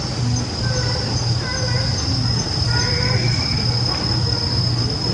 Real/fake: real